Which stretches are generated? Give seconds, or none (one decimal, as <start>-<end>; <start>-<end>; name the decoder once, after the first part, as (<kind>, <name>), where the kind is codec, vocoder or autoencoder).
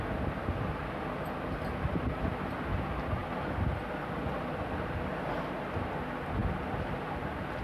none